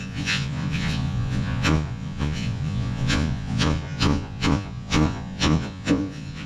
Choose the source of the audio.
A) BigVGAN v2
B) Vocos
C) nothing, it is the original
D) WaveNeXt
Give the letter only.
B